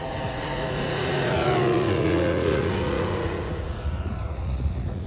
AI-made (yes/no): yes